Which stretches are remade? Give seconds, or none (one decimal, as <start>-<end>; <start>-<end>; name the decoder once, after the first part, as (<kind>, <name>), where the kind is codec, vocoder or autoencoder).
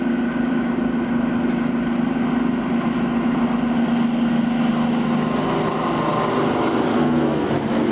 6.9-7.5 (codec, SNAC)